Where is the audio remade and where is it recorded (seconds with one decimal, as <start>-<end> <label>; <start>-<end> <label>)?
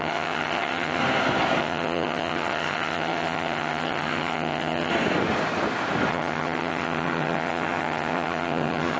0.0-1.0 remade; 1.0-1.6 recorded; 1.6-4.9 remade; 4.9-6.1 recorded; 6.1-9.0 remade